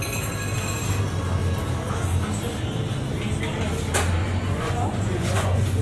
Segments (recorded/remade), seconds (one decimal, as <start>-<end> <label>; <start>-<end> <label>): 0.0-4.2 recorded; 4.2-5.8 remade

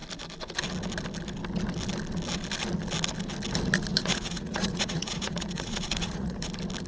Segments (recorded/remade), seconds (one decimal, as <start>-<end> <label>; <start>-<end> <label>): 0.0-3.9 recorded; 3.9-6.5 remade; 6.5-6.9 recorded

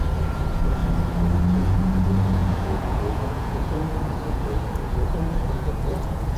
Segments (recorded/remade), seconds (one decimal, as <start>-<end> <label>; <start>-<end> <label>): 0.0-0.8 remade; 0.8-1.4 recorded; 1.4-6.4 remade

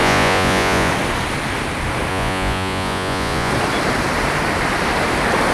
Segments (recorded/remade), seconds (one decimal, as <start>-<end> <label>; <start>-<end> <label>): 0.0-0.9 remade; 0.9-2.1 recorded; 2.1-3.5 remade; 3.5-5.5 recorded

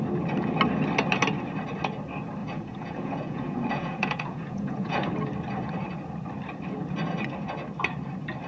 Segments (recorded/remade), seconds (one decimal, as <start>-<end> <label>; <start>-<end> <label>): 0.0-2.4 recorded; 2.4-5.1 remade; 5.1-8.5 recorded

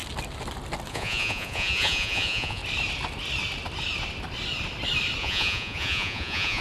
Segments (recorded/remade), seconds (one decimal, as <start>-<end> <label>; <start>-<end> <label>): 0.0-0.9 recorded; 0.9-2.6 remade; 2.6-5.2 recorded; 5.2-6.6 remade

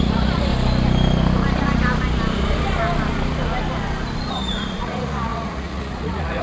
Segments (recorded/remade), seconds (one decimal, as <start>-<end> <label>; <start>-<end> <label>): 0.0-0.5 remade; 0.5-4.3 recorded; 4.3-6.4 remade

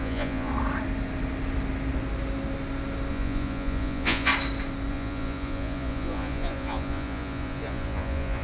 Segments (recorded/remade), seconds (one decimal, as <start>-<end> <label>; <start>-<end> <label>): 0.0-0.5 remade; 0.5-3.1 recorded; 3.1-4.3 remade; 4.3-4.9 recorded; 4.9-8.4 remade